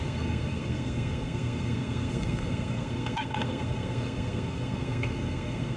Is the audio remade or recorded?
remade